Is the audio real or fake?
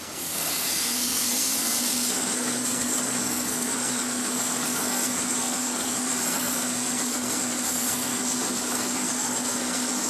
fake